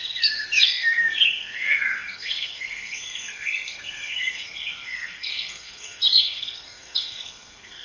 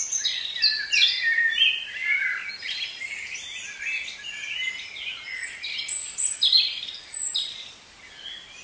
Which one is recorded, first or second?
second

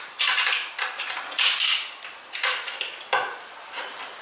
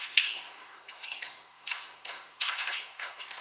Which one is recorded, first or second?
first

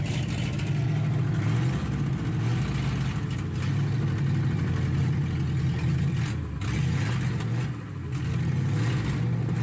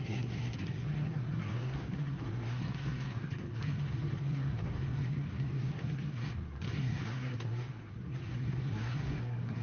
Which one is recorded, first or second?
first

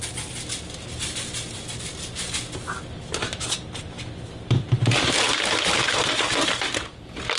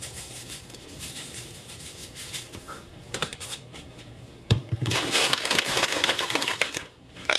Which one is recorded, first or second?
first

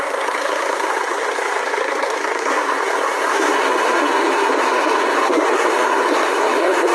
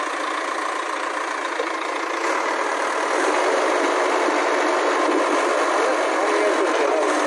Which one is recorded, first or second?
second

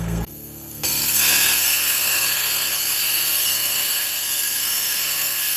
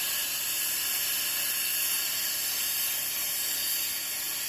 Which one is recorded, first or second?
second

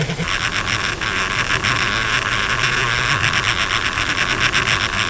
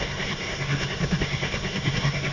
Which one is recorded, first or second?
first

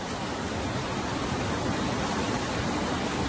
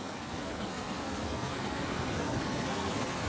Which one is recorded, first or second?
first